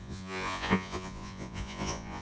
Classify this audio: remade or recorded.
remade